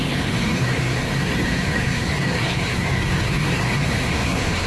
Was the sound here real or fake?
fake